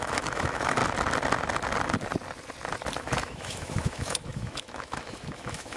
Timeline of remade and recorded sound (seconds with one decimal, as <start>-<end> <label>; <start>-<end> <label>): 0.0-0.8 remade; 0.8-3.0 recorded; 3.0-5.8 remade

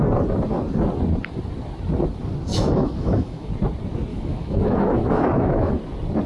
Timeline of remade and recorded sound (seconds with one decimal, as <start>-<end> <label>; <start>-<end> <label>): 0.0-2.5 recorded; 2.5-3.5 remade; 3.5-4.1 recorded; 4.1-5.7 remade; 5.7-6.3 recorded